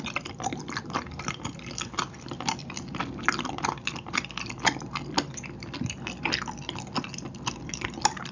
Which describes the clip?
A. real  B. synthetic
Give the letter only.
B